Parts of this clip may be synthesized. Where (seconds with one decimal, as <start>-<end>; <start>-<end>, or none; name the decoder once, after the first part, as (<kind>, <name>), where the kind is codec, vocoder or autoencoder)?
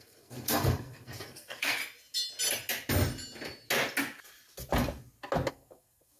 0.0-1.8 (codec, SNAC); 5.5-6.2